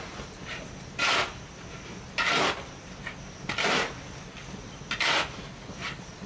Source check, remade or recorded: recorded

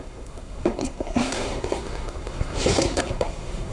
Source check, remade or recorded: remade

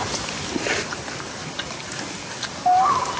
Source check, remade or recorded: recorded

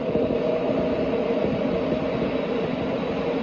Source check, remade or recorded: recorded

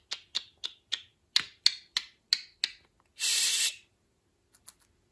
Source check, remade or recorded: recorded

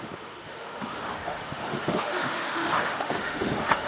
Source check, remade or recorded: remade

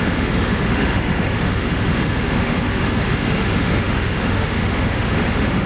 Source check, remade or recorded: remade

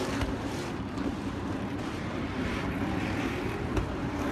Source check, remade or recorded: remade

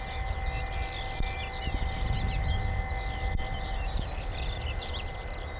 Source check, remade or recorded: recorded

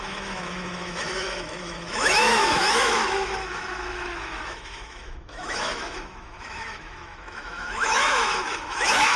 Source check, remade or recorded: remade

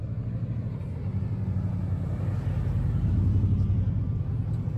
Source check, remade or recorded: recorded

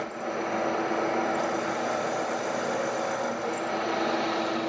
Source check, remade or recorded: recorded